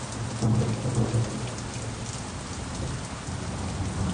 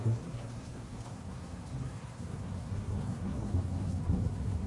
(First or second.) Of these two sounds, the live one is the first